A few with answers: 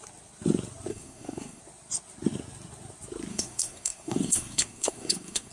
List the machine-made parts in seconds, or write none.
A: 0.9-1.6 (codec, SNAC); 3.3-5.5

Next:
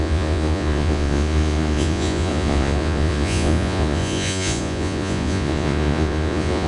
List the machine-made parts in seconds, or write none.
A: 0.0-6.7 (vocoder, Vocos)

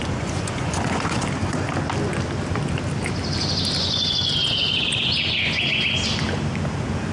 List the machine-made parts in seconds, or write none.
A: 0.0-1.2 (vocoder, Vocos); 3.8-5.8